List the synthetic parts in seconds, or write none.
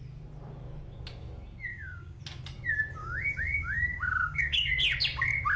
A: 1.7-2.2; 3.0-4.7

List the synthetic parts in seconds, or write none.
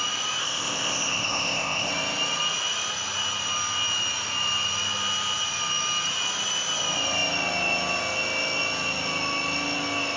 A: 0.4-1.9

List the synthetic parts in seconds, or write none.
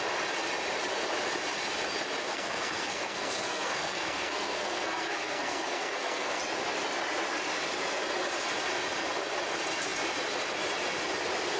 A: 2.3-6.4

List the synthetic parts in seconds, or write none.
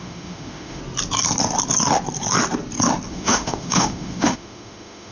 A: 0.0-0.8; 3.1-5.1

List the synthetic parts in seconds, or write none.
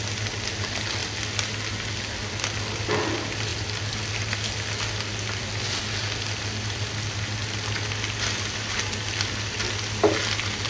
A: none